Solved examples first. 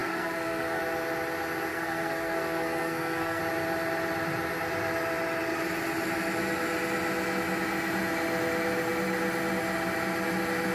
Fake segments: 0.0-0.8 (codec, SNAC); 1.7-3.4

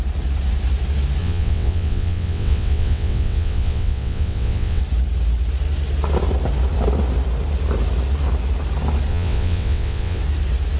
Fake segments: 1.2-4.8 (vocoder, WaveNeXt); 9.1-10.2

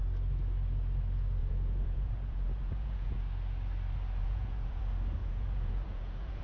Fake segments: 1.4-3.2 (vocoder, Vocos); 4.2-4.8; 5.2-6.4

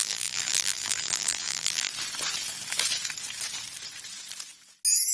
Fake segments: 0.0-1.9 (vocoder, BigVGAN v2)

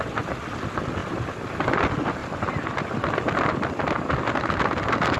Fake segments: none

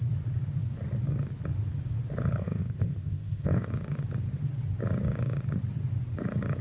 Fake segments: 2.4-3.7 (codec, ZipCodec)

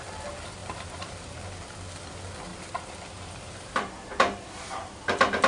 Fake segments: 0.6-1.4 (vocoder, BigVGAN v2); 2.5-4.9

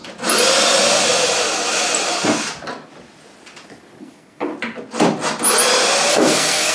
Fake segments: 4.0-4.5 (codec, SNAC); 6.1-6.7